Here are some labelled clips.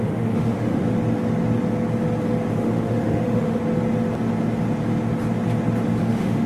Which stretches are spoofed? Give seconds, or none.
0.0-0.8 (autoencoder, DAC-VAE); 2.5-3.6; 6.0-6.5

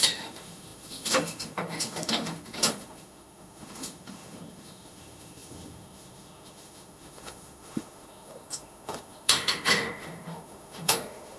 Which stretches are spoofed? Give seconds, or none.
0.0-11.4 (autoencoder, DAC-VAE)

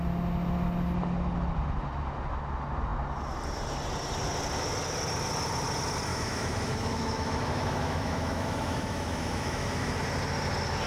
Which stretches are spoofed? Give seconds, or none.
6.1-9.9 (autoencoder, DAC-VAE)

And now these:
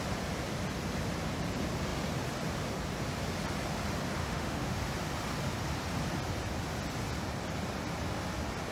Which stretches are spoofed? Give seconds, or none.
4.2-4.8 (autoencoder, DAC-VAE)